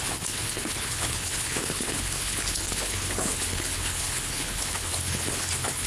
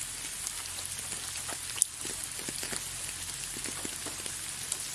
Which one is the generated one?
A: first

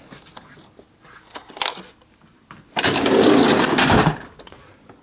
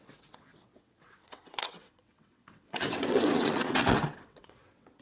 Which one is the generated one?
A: second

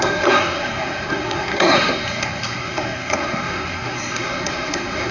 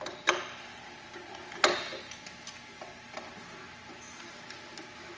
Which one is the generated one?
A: first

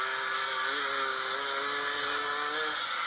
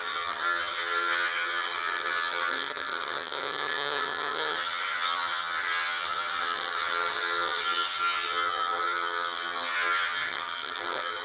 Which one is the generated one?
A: second